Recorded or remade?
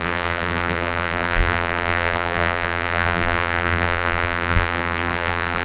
remade